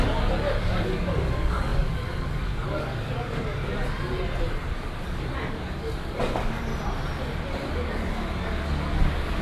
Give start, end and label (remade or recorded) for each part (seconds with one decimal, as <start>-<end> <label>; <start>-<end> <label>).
0.0-3.6 remade; 3.6-4.7 recorded; 4.7-6.7 remade; 6.7-7.7 recorded; 7.7-9.4 remade